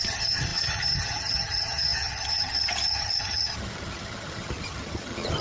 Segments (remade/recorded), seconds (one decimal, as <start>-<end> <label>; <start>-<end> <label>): 0.0-5.4 remade

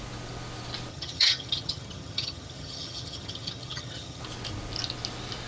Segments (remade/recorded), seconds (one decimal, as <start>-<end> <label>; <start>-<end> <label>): 0.0-0.9 recorded; 0.9-4.2 remade; 4.2-5.5 recorded

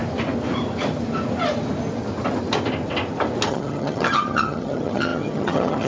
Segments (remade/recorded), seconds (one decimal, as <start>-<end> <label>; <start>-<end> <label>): 0.0-3.5 recorded; 3.5-5.9 remade

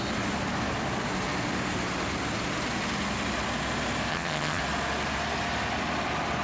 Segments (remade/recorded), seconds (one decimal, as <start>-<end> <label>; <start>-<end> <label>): 0.0-4.1 recorded; 4.1-4.6 remade; 4.6-6.4 recorded

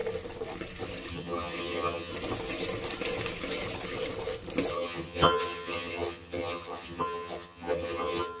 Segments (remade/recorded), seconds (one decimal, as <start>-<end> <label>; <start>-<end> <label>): 0.0-1.1 recorded; 1.1-2.1 remade; 2.1-4.7 recorded; 4.7-8.4 remade

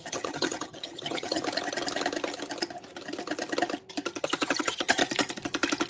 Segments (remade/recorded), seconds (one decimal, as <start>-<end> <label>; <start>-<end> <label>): 0.0-1.4 remade; 1.4-4.2 recorded; 4.2-5.0 remade; 5.0-5.9 recorded

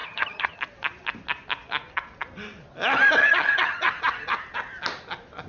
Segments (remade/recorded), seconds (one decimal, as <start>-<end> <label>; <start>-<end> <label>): 0.0-0.6 remade; 0.6-3.2 recorded; 3.2-3.9 remade; 3.9-5.5 recorded

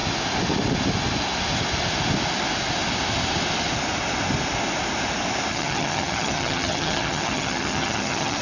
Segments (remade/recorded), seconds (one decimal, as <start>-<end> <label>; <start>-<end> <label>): 0.0-5.5 recorded; 5.5-8.4 remade